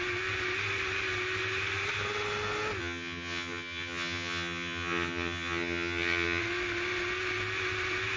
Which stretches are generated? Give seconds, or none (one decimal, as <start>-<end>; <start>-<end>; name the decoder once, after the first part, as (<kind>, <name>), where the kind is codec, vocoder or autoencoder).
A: 2.8-6.4 (vocoder, HiFi-GAN)